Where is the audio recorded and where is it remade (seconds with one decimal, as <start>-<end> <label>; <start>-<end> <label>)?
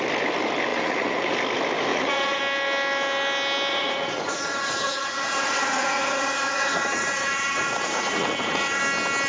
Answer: 0.0-0.7 recorded; 0.7-1.3 remade; 1.3-1.9 recorded; 1.9-2.4 remade; 2.4-3.7 recorded; 3.7-8.8 remade; 8.8-9.3 recorded